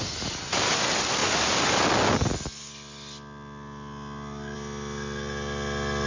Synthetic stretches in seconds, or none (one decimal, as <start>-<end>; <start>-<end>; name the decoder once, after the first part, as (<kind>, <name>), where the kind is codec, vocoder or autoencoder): none